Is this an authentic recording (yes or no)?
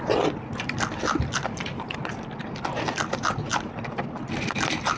yes